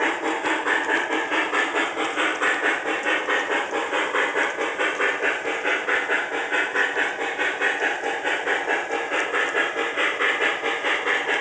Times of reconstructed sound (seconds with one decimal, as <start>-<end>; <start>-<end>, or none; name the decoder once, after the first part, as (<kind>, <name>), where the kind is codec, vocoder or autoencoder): none